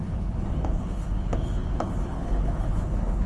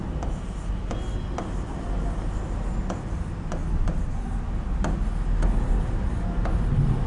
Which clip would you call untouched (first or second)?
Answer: second